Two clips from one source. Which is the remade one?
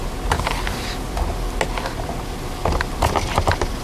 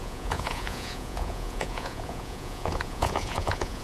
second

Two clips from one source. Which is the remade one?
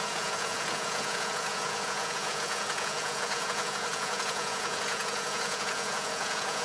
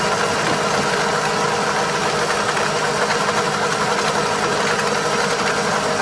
first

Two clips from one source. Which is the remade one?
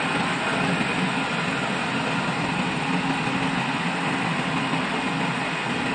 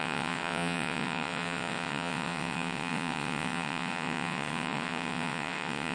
second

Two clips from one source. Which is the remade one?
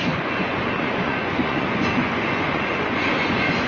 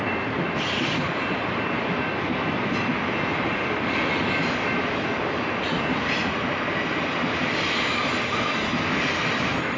first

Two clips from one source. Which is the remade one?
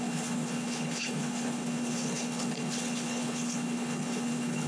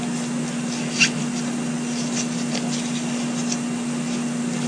first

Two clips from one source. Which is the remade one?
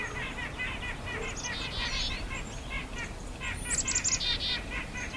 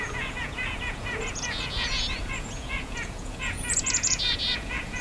second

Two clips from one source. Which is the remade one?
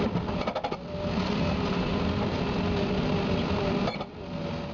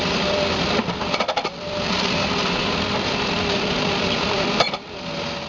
second